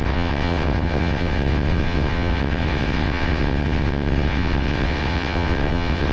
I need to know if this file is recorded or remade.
remade